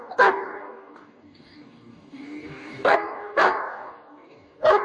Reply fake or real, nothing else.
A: fake